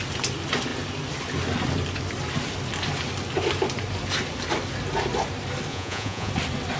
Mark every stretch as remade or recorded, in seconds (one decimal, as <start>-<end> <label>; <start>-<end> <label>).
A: 0.0-5.7 recorded; 5.7-6.3 remade; 6.3-6.8 recorded